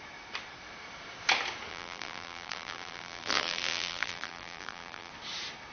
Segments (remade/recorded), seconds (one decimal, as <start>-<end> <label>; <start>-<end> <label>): 0.0-1.7 recorded; 1.7-5.1 remade; 5.1-5.7 recorded